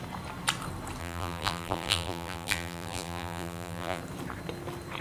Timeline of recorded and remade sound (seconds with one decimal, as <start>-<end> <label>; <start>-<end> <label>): 0.0-1.0 recorded; 1.0-4.0 remade; 4.0-5.0 recorded